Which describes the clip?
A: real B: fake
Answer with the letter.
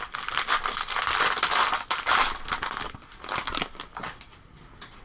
A